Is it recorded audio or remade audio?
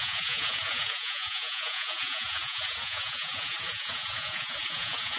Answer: remade